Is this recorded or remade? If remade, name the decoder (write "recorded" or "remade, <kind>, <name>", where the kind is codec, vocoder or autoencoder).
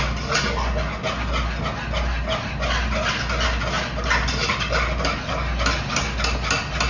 recorded